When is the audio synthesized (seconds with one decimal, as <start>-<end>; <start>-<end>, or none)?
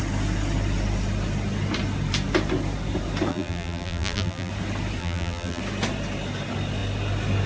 3.3-4.5; 5.0-5.6